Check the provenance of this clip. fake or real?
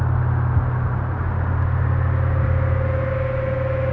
real